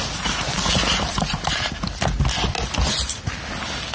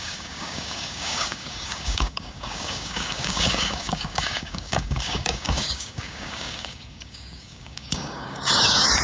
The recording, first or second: first